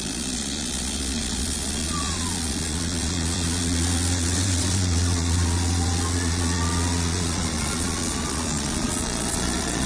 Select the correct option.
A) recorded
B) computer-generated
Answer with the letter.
B